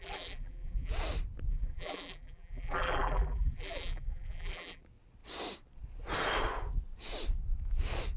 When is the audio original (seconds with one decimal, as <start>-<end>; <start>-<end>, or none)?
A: 0.9-1.5; 4.8-8.2